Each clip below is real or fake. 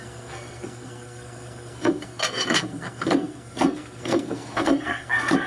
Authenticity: fake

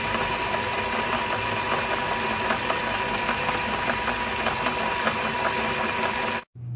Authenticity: real